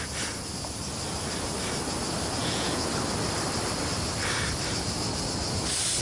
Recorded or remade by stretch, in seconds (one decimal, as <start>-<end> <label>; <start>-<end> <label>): 0.0-2.4 recorded; 2.4-2.9 remade; 2.9-6.0 recorded